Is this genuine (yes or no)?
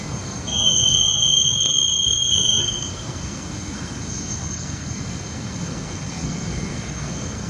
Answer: no